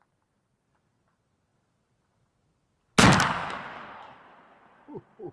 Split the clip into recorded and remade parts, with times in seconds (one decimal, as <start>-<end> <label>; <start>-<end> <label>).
0.0-5.3 recorded